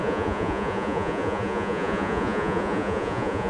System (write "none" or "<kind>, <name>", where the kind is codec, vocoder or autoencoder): vocoder, Vocos